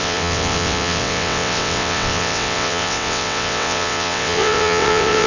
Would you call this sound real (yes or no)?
no